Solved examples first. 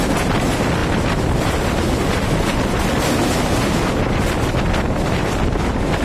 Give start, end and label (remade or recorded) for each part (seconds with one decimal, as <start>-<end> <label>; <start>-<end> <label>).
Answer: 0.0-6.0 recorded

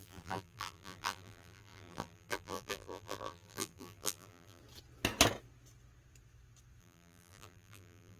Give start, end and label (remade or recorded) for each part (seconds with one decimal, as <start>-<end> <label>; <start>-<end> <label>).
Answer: 0.0-4.6 remade; 4.6-6.8 recorded; 6.8-8.2 remade

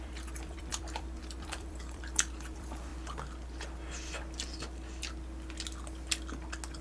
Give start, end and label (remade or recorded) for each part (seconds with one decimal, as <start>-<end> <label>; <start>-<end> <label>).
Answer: 0.0-2.9 remade; 2.9-6.8 recorded

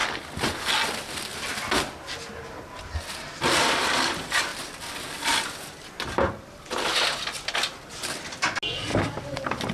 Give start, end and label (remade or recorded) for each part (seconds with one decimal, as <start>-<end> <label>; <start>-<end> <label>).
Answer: 0.0-8.9 recorded; 8.9-9.7 remade